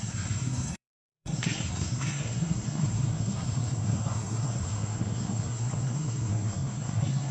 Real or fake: fake